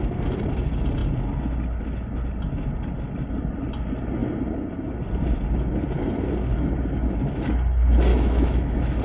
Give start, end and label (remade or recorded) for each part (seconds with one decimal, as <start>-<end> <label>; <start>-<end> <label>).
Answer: 0.0-8.1 recorded; 8.1-9.0 remade